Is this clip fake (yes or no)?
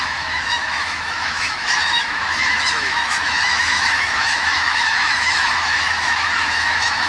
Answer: yes